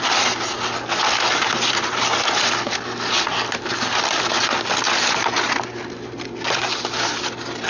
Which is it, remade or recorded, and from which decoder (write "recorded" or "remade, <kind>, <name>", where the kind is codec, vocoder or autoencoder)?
recorded